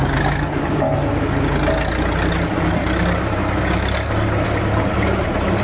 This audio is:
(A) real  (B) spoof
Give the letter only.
A